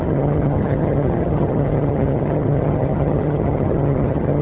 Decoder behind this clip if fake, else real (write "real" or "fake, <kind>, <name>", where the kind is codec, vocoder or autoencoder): fake, vocoder, HiFi-GAN